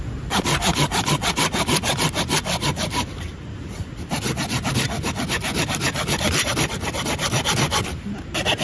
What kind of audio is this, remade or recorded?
recorded